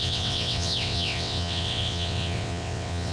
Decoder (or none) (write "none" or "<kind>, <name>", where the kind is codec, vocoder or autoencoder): vocoder, WaveNeXt